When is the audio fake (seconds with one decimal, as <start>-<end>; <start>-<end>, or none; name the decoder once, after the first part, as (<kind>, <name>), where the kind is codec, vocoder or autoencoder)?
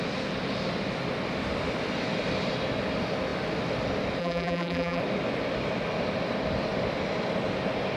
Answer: 4.2-5.0 (vocoder, BigVGAN v2)